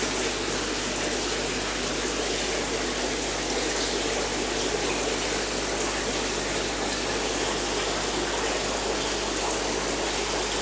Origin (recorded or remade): recorded